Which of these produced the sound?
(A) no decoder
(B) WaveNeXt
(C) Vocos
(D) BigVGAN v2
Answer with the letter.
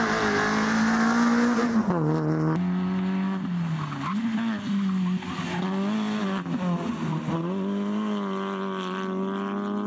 A